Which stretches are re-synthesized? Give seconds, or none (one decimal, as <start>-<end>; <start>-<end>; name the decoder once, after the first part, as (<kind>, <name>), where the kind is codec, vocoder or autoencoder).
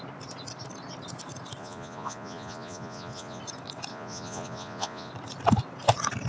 1.6-3.4 (vocoder, Vocos); 3.9-5.1